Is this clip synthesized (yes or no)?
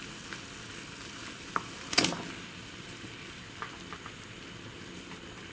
no